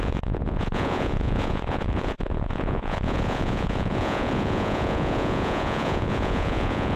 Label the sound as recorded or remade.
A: remade